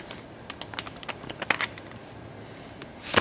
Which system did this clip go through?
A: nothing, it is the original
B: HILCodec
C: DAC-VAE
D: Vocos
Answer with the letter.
A